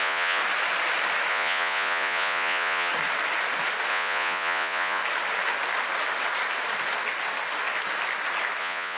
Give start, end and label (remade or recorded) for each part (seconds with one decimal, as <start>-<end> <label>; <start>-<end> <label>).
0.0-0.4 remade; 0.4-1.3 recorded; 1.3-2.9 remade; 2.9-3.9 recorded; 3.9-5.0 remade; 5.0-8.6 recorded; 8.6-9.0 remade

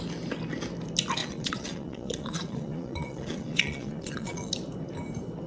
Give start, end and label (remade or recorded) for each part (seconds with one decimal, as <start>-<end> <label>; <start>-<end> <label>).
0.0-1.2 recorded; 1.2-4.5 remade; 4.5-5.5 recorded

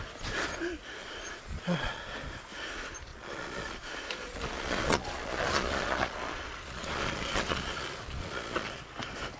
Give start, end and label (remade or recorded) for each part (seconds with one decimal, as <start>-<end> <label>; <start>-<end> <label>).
0.0-1.0 recorded; 1.0-2.0 remade; 2.0-3.1 recorded; 3.1-3.8 remade; 3.8-4.2 recorded; 4.2-8.8 remade; 8.8-9.4 recorded

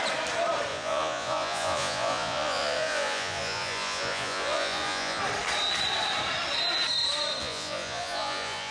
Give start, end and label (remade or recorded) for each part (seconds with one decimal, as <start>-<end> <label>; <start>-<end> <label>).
0.0-0.7 recorded; 0.7-5.2 remade; 5.2-7.4 recorded; 7.4-8.7 remade

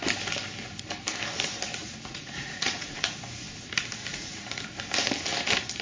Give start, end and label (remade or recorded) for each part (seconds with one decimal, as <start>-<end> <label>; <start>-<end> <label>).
0.0-1.8 recorded; 1.8-3.2 remade; 3.2-4.1 recorded; 4.1-4.6 remade; 4.6-5.8 recorded